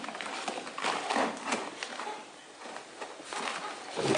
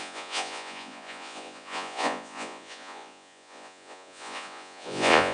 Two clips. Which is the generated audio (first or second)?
second